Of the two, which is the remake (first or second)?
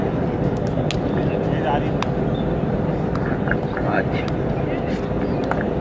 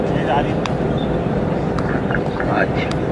second